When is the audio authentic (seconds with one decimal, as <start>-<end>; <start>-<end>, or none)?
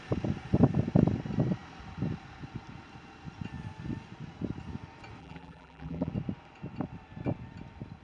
0.0-5.2; 6.1-8.0